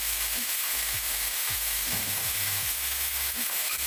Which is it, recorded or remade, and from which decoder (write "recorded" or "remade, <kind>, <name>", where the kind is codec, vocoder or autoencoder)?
remade, autoencoder, DAC-VAE